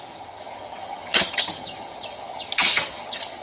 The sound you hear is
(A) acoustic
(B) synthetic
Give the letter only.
B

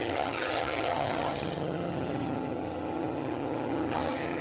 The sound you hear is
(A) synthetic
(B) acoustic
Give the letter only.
A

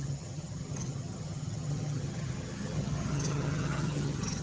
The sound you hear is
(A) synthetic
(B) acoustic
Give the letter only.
A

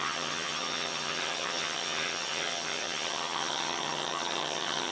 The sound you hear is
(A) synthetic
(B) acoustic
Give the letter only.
A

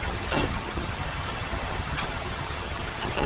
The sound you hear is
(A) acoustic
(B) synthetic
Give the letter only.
B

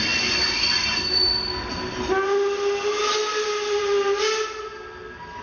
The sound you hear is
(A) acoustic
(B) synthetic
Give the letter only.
A